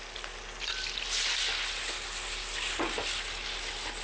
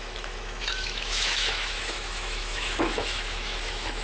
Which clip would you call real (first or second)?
first